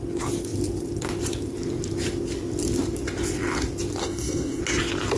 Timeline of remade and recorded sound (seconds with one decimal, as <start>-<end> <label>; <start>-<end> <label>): 0.0-4.0 recorded; 4.0-4.6 remade; 4.6-5.2 recorded